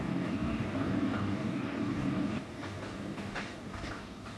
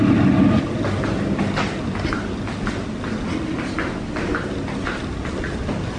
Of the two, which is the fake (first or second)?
first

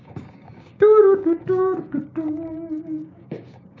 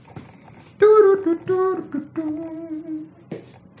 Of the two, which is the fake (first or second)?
first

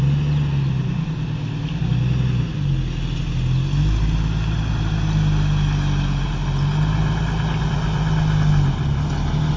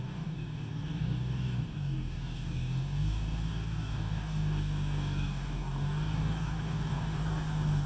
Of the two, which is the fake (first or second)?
second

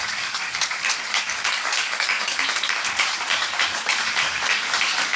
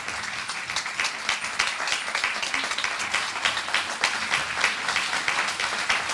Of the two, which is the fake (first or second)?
first